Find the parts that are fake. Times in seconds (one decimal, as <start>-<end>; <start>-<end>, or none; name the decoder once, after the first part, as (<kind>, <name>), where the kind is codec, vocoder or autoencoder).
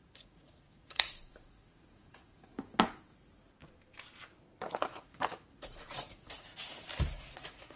0.0-2.5 (vocoder, Vocos); 4.7-6.5; 7.3-7.8